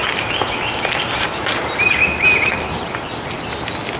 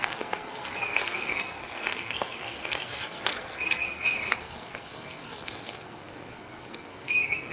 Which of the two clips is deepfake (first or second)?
second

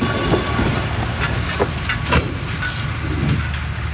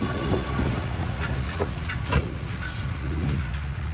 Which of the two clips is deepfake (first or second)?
second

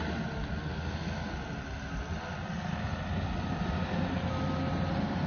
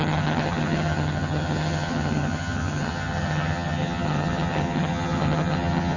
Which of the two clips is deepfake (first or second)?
second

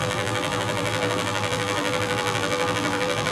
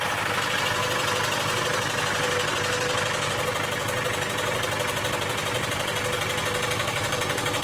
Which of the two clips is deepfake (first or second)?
first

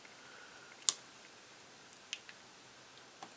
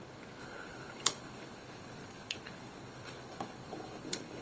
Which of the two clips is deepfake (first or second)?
second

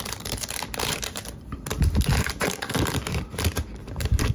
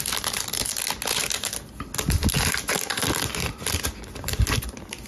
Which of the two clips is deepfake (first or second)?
first